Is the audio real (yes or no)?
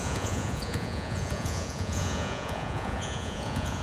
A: no